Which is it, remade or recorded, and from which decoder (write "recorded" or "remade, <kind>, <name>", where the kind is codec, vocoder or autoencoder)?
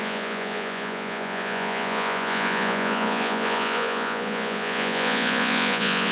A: remade, vocoder, Vocos